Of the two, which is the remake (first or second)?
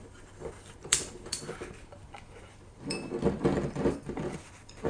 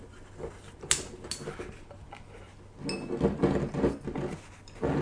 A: first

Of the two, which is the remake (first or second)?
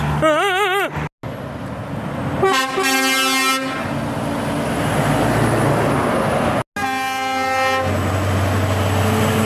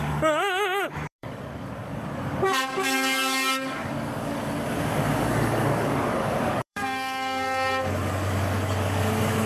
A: second